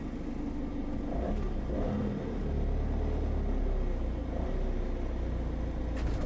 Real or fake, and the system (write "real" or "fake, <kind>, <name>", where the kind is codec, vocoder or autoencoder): real